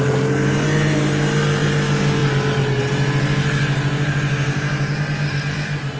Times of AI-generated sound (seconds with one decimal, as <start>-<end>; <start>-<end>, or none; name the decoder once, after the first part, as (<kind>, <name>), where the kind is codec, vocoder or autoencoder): none